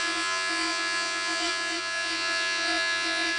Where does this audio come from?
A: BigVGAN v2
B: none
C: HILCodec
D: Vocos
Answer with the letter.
D